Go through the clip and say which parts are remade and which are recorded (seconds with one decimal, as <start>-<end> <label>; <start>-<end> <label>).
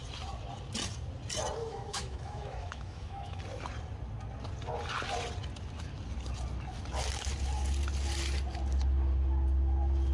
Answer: 0.0-1.6 recorded; 1.6-3.4 remade; 3.4-10.1 recorded